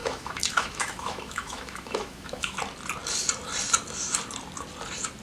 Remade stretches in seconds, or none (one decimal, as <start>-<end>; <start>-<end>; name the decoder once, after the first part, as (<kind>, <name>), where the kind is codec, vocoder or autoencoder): 0.0-2.6 (autoencoder, DAC-VAE)